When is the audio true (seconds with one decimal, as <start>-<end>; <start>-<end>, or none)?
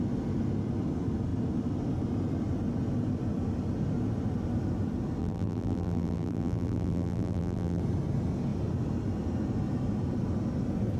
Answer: 0.0-5.2; 7.8-11.0